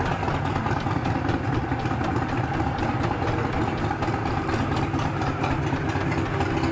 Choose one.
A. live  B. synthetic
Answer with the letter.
A